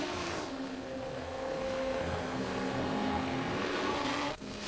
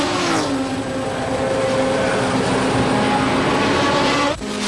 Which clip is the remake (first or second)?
first